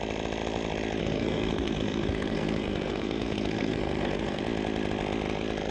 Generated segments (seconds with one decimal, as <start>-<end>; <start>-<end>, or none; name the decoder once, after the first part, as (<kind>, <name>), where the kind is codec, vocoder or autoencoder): 1.0-4.4 (codec, SNAC)